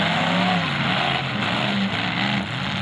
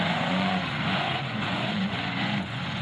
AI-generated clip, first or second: second